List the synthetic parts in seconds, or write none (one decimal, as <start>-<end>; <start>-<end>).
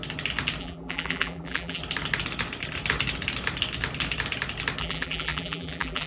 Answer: 0.6-1.8; 4.8-6.1